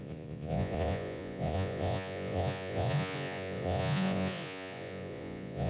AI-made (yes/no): yes